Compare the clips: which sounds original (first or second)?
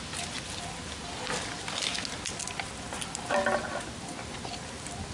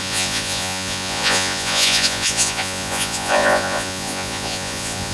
first